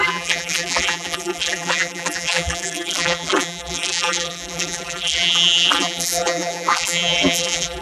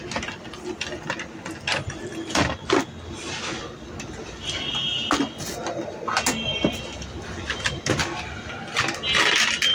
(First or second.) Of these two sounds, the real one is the second